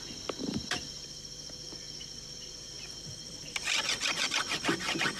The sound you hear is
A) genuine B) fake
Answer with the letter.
B